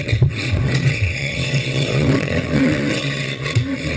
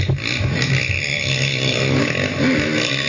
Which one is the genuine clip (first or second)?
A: second